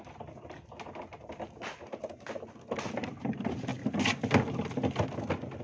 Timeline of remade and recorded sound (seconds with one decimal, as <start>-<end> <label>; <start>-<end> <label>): 0.0-5.6 recorded